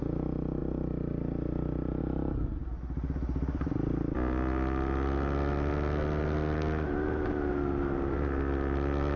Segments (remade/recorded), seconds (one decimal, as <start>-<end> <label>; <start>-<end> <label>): 0.0-9.2 recorded